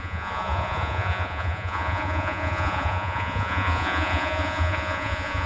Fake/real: fake